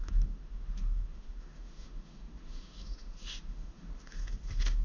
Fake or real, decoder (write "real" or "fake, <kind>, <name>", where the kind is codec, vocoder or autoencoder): fake, autoencoder, DAC-VAE